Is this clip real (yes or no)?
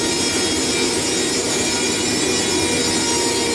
yes